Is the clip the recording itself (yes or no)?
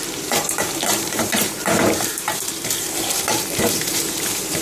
no